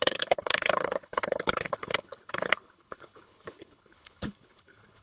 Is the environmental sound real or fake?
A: fake